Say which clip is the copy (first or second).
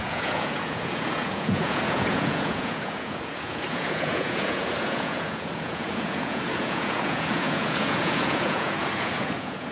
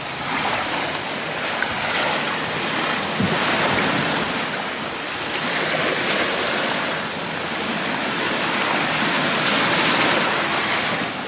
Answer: first